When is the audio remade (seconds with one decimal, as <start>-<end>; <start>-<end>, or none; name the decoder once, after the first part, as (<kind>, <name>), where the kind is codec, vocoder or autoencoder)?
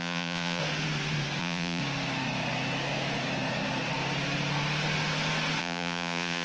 0.0-0.6 (vocoder, Vocos); 1.4-1.8; 5.6-6.4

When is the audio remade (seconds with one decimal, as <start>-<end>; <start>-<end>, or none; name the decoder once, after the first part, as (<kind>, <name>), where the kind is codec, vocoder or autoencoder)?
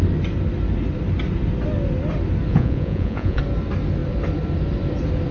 2.5-3.4 (vocoder, Vocos)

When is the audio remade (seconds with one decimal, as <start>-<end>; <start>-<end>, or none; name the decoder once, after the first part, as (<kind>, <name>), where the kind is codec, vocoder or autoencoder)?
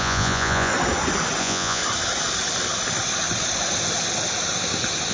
0.0-0.7 (vocoder, Vocos); 1.4-1.8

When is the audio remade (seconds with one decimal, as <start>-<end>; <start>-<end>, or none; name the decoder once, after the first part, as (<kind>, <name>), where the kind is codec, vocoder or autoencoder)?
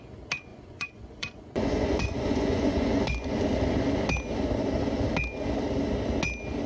0.5-3.4 (vocoder, Vocos)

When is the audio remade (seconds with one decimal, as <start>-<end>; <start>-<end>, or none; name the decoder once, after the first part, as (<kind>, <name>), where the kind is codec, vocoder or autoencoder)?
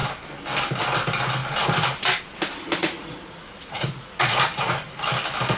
2.8-4.8 (vocoder, Vocos)